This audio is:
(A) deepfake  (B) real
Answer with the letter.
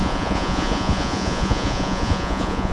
A